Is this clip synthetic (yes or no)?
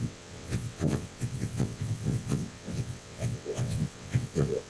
yes